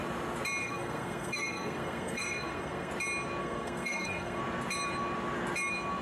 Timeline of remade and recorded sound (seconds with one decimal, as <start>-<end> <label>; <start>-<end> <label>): 0.0-0.6 recorded; 0.6-2.9 remade; 2.9-3.4 recorded; 3.4-4.4 remade; 4.4-6.0 recorded